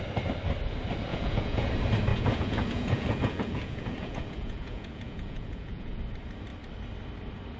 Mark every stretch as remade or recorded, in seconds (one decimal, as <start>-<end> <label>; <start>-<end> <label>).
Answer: 0.0-1.1 recorded; 1.1-1.7 remade; 1.7-2.1 recorded; 2.1-6.0 remade; 6.0-7.6 recorded